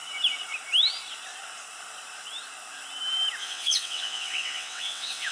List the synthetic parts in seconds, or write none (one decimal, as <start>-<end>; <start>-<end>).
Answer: 3.4-5.3